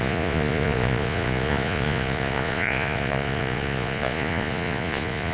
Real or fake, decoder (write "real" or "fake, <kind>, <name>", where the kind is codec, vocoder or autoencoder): fake, vocoder, Vocos